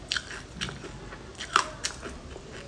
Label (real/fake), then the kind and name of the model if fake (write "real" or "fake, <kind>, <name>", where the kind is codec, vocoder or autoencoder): real